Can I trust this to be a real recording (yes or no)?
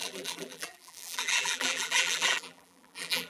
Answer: no